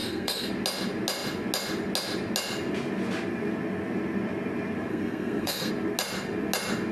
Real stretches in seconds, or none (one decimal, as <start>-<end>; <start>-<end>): 0.5-4.9; 5.7-6.9